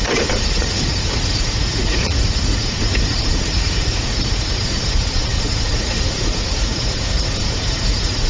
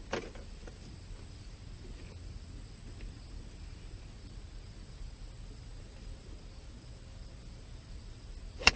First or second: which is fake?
first